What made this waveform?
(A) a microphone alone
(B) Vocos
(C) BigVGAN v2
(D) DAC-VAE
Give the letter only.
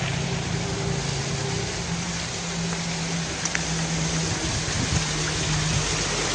A